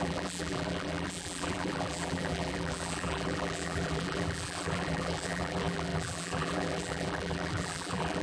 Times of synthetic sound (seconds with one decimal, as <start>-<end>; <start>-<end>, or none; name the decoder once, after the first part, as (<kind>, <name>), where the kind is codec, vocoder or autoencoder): 0.0-8.2 (vocoder, BigVGAN v2)